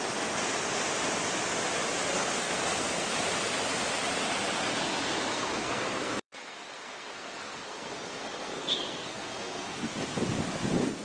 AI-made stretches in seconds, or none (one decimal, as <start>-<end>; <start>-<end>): 2.1-3.1; 5.3-9.9